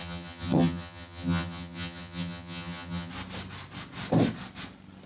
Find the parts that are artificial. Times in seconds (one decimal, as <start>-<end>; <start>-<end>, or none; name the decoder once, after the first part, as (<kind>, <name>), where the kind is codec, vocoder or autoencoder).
0.0-3.1 (vocoder, HiFi-GAN)